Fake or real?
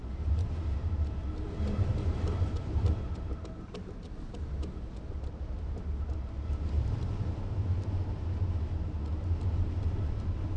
real